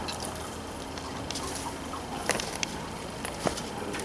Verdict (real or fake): real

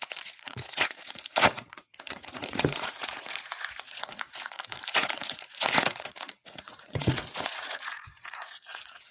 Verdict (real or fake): fake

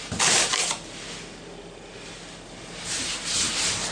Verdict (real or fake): real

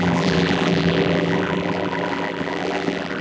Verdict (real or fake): fake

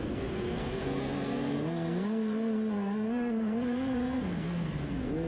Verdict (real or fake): fake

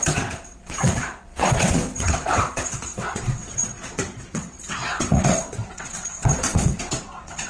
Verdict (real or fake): fake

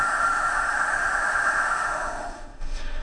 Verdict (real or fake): fake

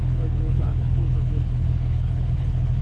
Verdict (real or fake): fake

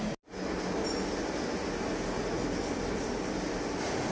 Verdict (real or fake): real